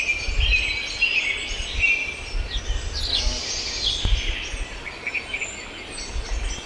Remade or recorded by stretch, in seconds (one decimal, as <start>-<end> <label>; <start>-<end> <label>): 0.0-6.7 recorded